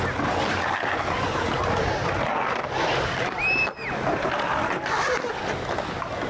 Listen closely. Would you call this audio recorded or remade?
recorded